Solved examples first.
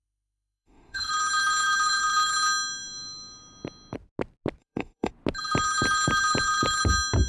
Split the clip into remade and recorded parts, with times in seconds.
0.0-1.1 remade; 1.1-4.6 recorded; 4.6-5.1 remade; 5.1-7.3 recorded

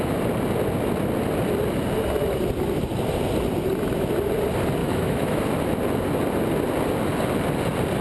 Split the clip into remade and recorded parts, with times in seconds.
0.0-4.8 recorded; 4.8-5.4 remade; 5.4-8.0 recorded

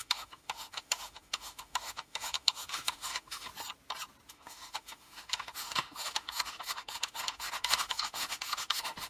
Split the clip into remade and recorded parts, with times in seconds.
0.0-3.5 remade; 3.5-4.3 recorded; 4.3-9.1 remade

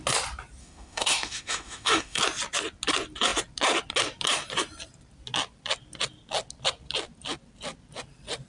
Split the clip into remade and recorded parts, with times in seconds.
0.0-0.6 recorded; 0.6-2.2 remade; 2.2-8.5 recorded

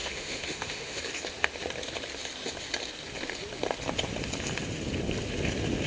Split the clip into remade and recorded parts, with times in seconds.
0.0-1.0 remade; 1.0-5.9 recorded

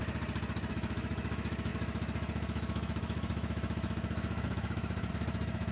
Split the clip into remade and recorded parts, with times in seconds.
0.0-0.7 recorded; 0.7-5.7 remade

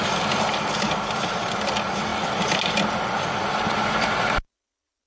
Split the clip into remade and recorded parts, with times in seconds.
0.0-5.1 recorded